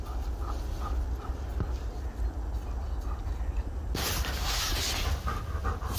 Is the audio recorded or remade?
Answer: recorded